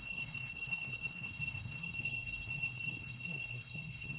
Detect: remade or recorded remade